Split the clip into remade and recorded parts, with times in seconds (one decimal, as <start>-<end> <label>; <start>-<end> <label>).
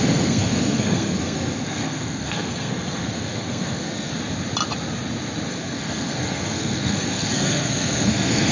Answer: 0.0-4.1 remade; 4.1-5.5 recorded; 5.5-8.5 remade